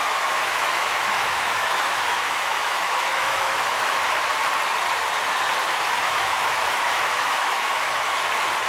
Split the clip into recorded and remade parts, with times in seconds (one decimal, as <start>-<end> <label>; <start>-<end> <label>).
0.0-4.0 remade; 4.0-5.6 recorded; 5.6-8.1 remade; 8.1-8.7 recorded